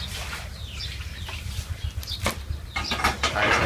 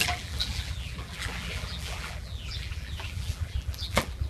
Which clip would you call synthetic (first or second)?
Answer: second